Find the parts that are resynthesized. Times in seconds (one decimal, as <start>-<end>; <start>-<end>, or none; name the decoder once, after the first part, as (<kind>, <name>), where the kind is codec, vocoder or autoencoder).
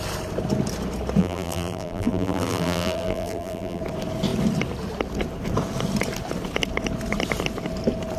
1.2-3.8 (vocoder, BigVGAN v2)